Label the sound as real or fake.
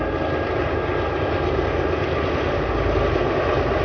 real